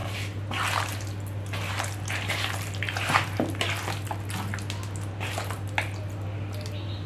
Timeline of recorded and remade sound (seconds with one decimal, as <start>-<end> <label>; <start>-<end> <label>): 0.0-7.1 recorded